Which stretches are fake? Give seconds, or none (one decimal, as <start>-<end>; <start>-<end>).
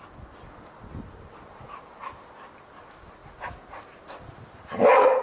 none